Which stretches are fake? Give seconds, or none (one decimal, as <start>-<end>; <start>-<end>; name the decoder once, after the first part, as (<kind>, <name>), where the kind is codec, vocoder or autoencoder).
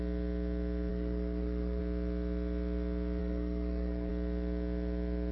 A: 0.9-1.8 (codec, SNAC); 3.2-4.1